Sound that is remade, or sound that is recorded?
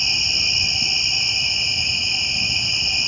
recorded